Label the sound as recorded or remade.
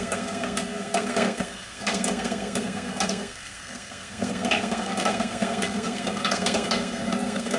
remade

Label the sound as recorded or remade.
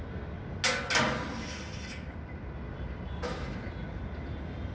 recorded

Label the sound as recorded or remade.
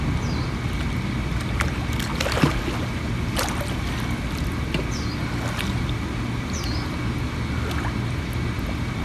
recorded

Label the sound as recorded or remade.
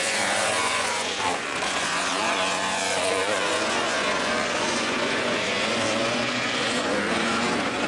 remade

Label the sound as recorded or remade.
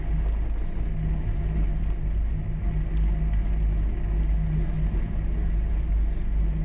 recorded